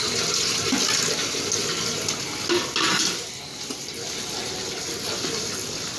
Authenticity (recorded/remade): recorded